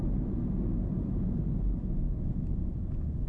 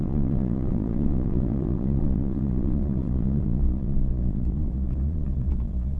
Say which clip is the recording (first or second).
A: first